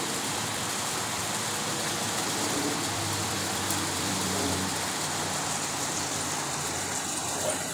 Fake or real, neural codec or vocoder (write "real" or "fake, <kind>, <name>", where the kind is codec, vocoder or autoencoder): fake, vocoder, BigVGAN v2